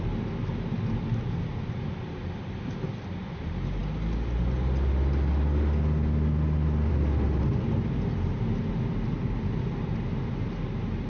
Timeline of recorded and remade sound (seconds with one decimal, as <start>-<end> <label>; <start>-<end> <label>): 0.0-11.1 recorded